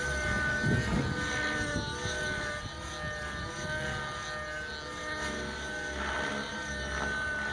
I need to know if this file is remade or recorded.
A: recorded